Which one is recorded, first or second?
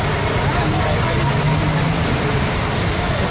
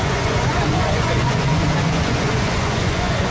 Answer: first